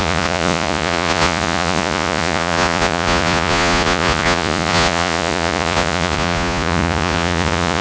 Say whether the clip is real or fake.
fake